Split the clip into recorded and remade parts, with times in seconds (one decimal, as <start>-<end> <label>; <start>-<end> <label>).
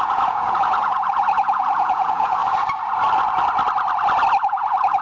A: 0.0-2.4 remade; 2.4-4.5 recorded; 4.5-5.0 remade